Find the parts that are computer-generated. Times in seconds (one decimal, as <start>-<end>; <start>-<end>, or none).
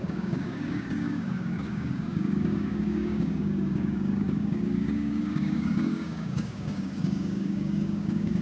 0.0-8.4